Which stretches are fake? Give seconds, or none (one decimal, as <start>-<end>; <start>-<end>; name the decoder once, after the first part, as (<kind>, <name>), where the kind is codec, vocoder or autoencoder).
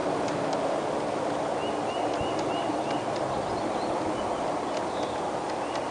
none